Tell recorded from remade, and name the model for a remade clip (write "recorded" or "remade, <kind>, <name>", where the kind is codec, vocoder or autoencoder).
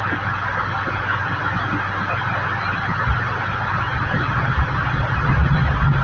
recorded